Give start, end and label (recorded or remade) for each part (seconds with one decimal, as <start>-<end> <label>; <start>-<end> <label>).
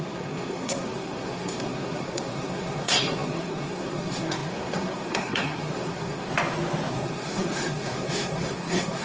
0.0-6.3 remade; 6.3-6.9 recorded; 6.9-9.0 remade